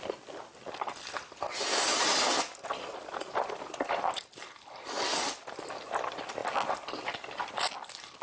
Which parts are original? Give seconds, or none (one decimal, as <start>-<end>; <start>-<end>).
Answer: 0.0-8.2